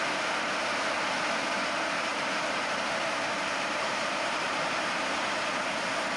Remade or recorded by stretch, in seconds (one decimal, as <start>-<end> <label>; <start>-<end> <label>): 0.0-2.1 recorded; 2.1-5.0 remade; 5.0-6.2 recorded